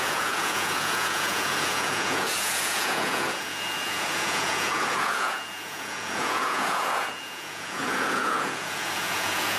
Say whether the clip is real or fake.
fake